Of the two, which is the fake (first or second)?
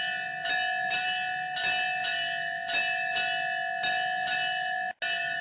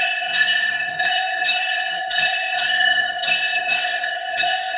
second